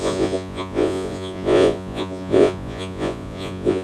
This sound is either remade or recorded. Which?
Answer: remade